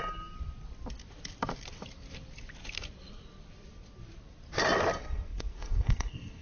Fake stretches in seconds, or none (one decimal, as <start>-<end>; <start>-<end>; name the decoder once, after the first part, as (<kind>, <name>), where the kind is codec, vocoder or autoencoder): 5.0-6.4 (codec, SNAC)